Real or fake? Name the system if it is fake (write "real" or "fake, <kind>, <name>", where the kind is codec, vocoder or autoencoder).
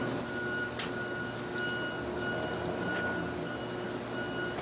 real